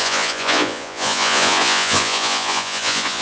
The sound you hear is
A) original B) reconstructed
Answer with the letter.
B